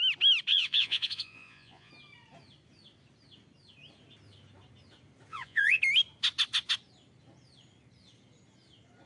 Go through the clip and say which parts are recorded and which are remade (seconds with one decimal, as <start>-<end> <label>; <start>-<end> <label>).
0.0-0.5 recorded; 0.5-1.9 remade; 1.9-5.3 recorded; 5.3-5.8 remade; 5.8-9.1 recorded